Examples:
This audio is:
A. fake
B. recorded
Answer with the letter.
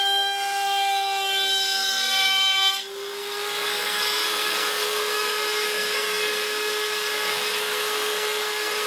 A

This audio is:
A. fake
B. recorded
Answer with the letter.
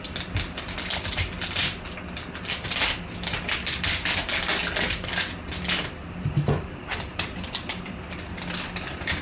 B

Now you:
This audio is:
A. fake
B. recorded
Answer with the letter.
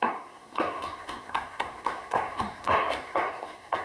A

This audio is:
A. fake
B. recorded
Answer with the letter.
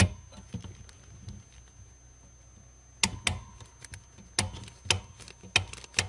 B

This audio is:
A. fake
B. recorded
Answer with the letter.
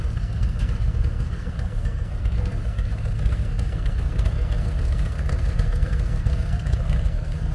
A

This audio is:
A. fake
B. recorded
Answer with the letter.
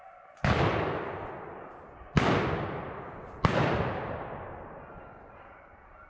B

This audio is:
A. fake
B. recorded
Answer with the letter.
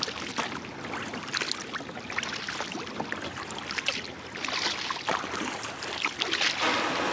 B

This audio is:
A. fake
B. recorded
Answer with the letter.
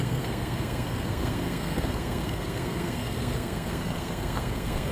A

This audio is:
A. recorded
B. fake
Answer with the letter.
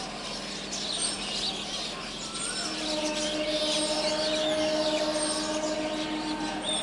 A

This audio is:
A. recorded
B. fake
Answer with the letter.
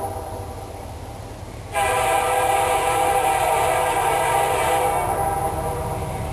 A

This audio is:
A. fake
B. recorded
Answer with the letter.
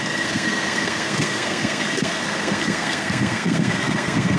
A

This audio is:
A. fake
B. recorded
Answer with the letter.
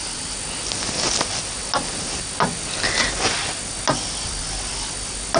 B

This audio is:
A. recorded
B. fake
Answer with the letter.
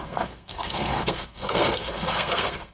B